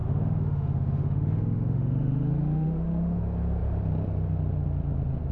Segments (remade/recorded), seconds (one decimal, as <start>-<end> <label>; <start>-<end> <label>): 0.0-3.2 remade; 3.2-5.3 recorded